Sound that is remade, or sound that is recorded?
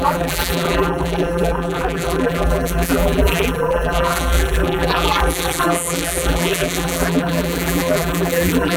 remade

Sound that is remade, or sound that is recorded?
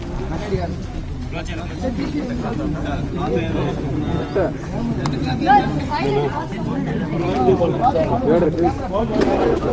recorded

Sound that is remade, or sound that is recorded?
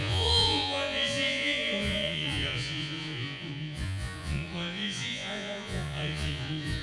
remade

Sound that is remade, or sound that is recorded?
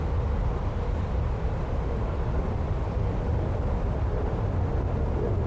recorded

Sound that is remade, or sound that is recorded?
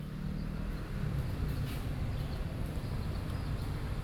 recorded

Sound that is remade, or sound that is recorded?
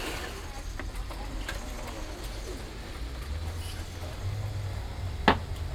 recorded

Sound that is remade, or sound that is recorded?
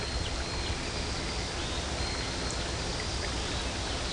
recorded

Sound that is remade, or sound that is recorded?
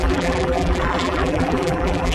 remade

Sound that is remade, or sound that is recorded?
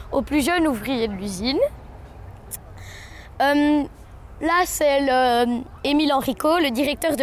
recorded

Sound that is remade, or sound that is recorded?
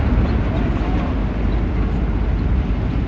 recorded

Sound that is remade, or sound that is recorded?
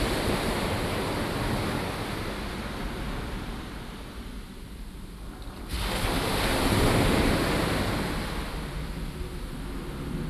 recorded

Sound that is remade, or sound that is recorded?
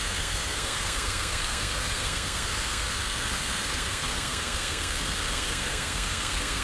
remade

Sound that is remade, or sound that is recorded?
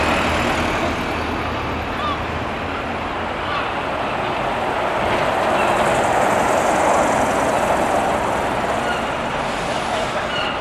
recorded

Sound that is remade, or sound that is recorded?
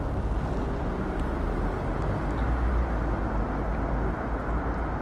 recorded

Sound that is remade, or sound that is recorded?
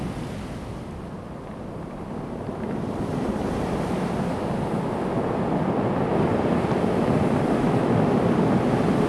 recorded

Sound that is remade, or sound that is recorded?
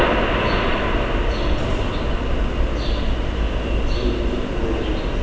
recorded